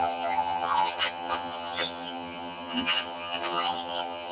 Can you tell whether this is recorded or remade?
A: remade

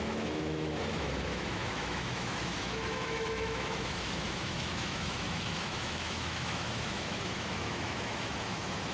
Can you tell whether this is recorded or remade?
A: remade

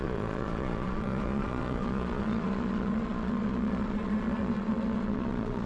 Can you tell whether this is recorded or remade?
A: remade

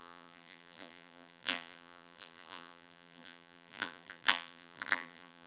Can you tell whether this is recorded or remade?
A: remade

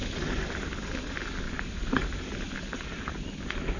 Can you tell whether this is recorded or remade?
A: recorded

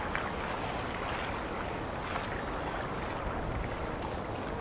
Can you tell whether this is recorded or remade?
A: recorded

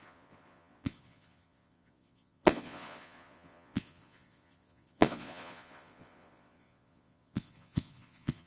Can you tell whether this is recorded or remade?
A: remade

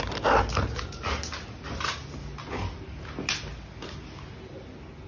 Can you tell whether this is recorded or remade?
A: recorded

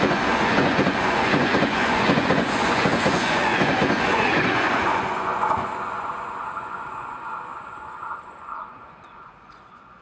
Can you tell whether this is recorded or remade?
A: remade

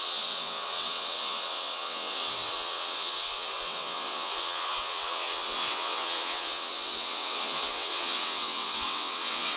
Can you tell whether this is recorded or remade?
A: remade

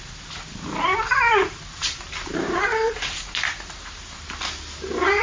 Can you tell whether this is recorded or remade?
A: remade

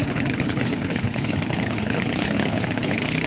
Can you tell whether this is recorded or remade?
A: remade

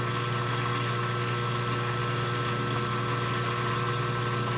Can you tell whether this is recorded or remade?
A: recorded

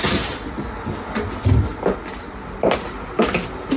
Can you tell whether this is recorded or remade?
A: recorded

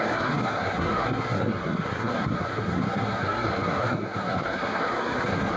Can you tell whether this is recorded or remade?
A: remade